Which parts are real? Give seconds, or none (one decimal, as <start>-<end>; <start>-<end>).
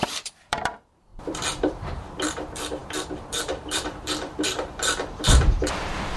none